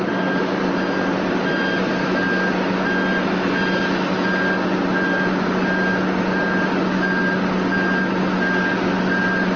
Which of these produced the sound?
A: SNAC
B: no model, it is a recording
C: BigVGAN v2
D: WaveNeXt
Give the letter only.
B